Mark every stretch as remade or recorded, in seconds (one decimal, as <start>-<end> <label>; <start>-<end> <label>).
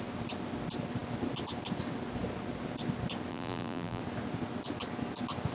0.0-3.3 recorded; 3.3-4.0 remade; 4.0-5.5 recorded